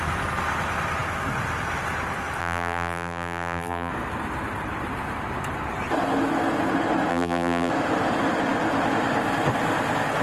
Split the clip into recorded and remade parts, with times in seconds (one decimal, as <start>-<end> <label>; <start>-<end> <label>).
0.0-2.4 recorded; 2.4-3.9 remade; 3.9-7.1 recorded; 7.1-7.7 remade; 7.7-10.2 recorded